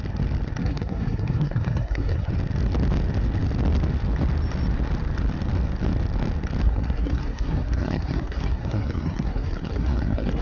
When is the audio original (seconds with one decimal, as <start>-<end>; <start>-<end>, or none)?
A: 0.0-0.6; 2.3-6.6